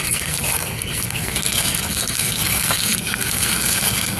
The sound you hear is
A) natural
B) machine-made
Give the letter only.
B